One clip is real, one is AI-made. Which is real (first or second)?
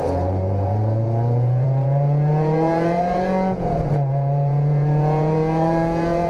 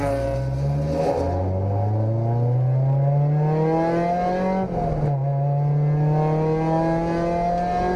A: second